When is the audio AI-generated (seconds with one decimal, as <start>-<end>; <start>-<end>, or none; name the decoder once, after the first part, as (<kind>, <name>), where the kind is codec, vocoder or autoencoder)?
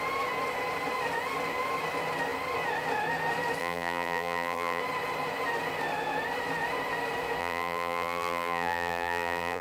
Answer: 3.6-4.8 (vocoder, BigVGAN v2); 7.4-9.6